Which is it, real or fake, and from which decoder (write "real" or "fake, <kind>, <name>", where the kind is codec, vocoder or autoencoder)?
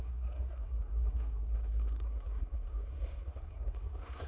fake, codec, SNAC